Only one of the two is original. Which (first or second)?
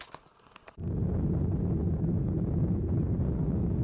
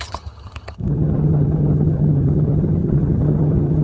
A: first